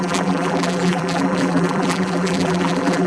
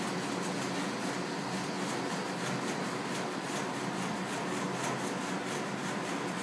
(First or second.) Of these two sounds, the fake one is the first